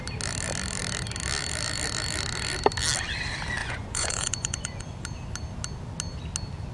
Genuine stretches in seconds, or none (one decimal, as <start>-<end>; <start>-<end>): 0.0-3.6; 4.8-6.7